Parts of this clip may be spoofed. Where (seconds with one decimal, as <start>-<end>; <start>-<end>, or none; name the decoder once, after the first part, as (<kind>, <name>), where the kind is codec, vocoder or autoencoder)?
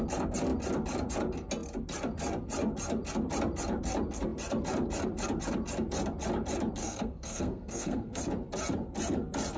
6.8-8.2 (codec, SNAC)